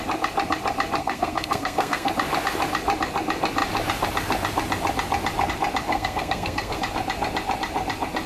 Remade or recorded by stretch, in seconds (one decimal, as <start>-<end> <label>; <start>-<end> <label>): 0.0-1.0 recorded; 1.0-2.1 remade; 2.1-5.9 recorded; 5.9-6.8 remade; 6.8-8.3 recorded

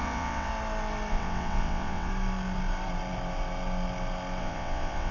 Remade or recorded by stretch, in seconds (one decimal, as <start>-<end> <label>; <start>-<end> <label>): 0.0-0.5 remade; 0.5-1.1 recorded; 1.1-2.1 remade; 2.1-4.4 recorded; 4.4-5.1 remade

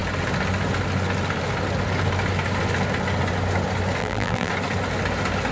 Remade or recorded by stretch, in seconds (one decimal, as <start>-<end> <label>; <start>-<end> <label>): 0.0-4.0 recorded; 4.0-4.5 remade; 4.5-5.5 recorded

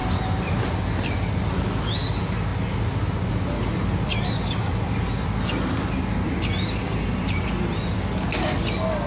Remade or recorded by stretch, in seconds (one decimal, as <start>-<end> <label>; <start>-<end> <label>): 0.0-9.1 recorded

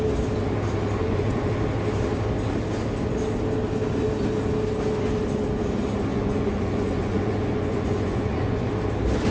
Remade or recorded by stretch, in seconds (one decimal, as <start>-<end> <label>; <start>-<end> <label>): 0.0-1.0 recorded; 1.0-1.5 remade; 1.5-6.1 recorded; 6.1-8.7 remade; 8.7-9.3 recorded